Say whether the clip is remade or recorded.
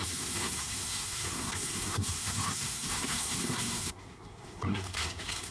remade